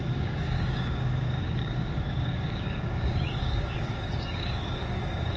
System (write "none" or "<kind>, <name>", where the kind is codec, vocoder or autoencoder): codec, DAC